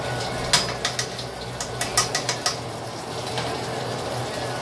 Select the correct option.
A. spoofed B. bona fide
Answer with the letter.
B